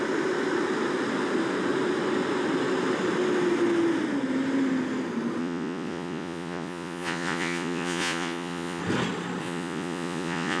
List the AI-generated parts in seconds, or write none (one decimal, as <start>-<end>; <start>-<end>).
5.4-8.8; 9.4-10.6